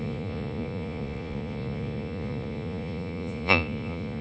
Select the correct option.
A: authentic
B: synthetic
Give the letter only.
B